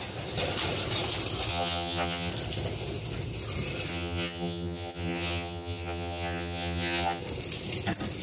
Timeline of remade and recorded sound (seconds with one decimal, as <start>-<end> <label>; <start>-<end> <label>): 0.0-1.5 recorded; 1.5-2.3 remade; 2.3-3.9 recorded; 3.9-7.2 remade; 7.2-8.2 recorded